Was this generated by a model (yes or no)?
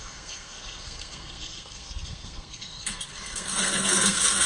yes